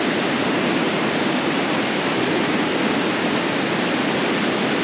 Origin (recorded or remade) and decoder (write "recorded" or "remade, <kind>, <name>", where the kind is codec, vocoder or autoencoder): recorded